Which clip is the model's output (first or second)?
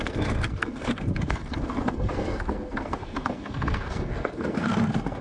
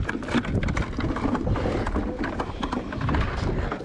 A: first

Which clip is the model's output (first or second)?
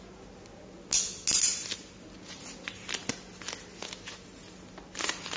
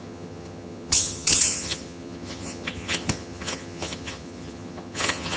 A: second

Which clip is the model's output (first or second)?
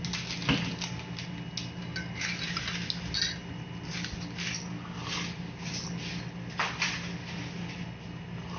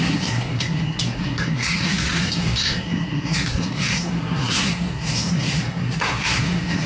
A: second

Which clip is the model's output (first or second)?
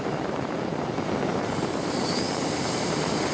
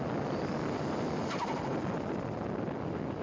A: first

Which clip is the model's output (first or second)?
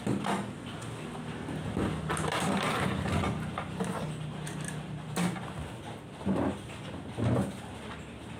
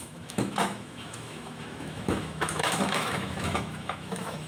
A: second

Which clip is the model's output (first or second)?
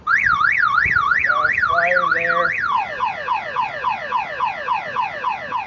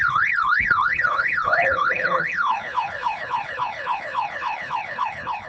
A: second